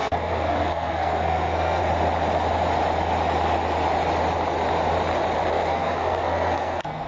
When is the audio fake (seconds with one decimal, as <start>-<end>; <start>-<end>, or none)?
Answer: 0.0-1.8; 5.5-7.1